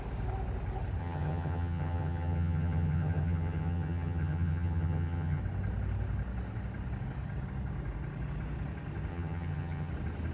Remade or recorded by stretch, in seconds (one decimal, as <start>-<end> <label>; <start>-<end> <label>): 0.0-1.0 recorded; 1.0-5.4 remade; 5.4-9.1 recorded; 9.1-9.9 remade; 9.9-10.3 recorded